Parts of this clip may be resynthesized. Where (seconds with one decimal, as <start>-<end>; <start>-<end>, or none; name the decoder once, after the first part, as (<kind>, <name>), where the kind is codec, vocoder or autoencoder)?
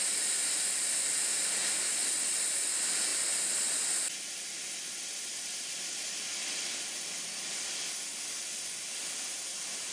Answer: none